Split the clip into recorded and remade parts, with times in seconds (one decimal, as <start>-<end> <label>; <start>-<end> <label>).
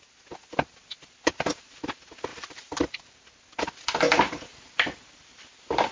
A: 0.0-2.3 recorded; 2.3-3.2 remade; 3.2-4.5 recorded; 4.5-5.0 remade; 5.0-5.9 recorded